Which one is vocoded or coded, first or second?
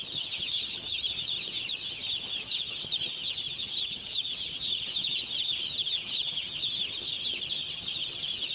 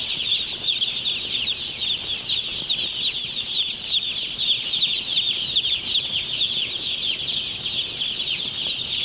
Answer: first